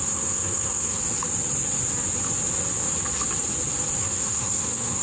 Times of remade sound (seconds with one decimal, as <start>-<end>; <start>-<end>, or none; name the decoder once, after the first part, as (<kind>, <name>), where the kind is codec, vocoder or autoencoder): 0.0-1.0 (codec, SNAC); 4.0-5.0